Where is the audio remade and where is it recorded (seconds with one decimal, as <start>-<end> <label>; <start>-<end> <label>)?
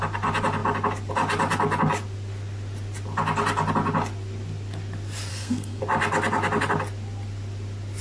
0.0-5.3 recorded; 5.3-5.8 remade; 5.8-8.0 recorded